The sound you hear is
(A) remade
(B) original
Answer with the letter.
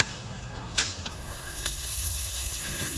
A